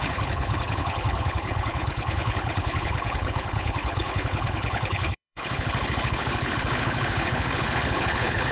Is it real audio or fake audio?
fake